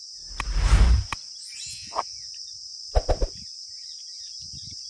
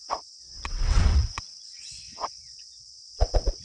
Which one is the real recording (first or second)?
first